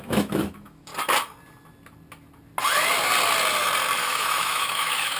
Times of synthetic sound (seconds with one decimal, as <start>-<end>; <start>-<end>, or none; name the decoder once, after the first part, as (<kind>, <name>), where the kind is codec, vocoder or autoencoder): 0.0-0.9 (autoencoder, DAC-VAE); 4.0-5.2